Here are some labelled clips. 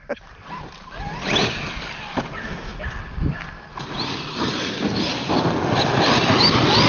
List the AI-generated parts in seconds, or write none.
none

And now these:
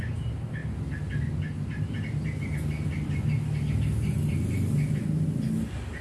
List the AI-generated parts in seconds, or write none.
none

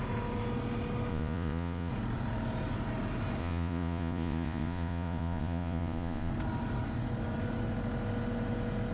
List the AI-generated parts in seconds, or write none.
1.1-1.9; 3.4-6.3

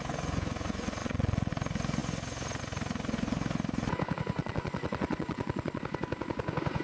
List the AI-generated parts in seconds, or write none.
1.0-1.5; 4.4-5.8

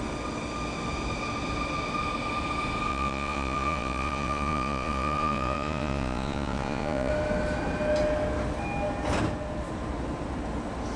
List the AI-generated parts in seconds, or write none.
2.9-7.1

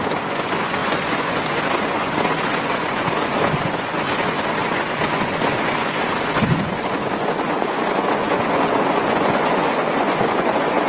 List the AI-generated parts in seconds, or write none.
0.0-10.9

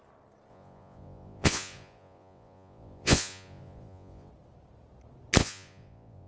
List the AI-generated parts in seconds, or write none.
0.5-4.3; 5.4-6.3

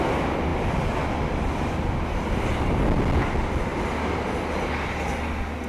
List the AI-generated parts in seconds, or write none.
none